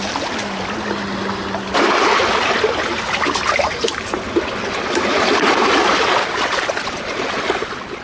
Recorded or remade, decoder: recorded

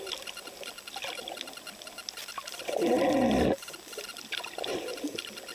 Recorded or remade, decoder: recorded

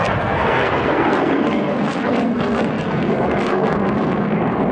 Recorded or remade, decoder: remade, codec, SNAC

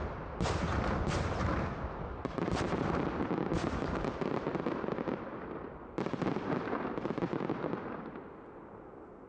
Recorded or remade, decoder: recorded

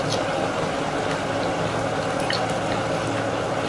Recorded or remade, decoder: recorded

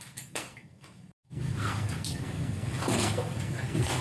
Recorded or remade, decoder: remade, codec, SNAC